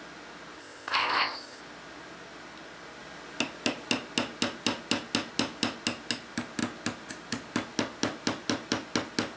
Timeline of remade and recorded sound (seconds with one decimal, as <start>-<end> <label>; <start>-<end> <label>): 0.0-0.6 recorded; 0.6-1.6 remade; 1.6-9.4 recorded